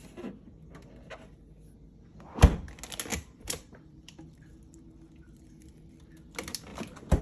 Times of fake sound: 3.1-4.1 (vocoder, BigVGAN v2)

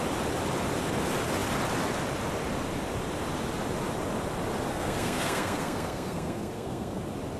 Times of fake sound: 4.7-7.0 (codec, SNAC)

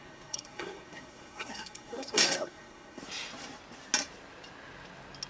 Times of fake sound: 0.0-3.0 (codec, SNAC)

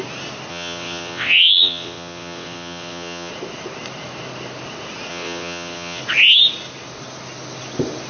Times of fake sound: 0.5-3.3 (vocoder, WaveNeXt); 5.1-6.0

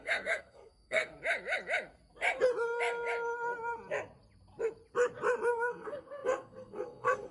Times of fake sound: 0.0-1.1 (codec, SNAC); 5.5-7.3

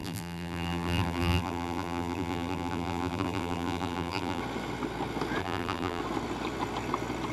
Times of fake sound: 0.0-4.4 (vocoder, BigVGAN v2); 5.4-6.0

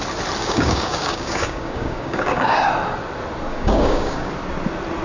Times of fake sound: 0.4-2.7 (codec, DAC); 3.5-4.3

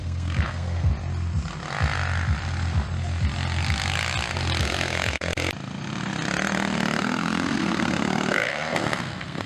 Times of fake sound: 0.0-0.9 (codec, SNAC); 4.6-5.3; 7.0-9.5